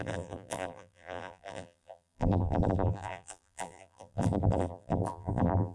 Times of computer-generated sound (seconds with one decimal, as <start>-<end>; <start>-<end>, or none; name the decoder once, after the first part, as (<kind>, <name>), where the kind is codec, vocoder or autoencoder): 0.0-5.7 (vocoder, BigVGAN v2)